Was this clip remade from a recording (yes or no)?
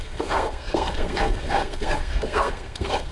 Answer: yes